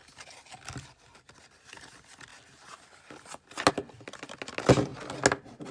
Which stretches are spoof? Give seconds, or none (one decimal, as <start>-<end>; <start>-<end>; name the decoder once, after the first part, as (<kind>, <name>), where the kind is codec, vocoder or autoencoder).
none